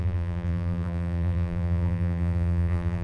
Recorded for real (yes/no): no